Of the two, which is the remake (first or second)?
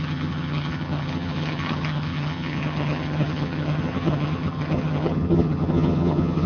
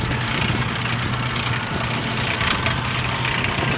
first